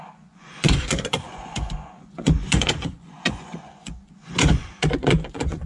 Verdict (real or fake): fake